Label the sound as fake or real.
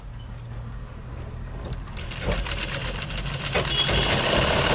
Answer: real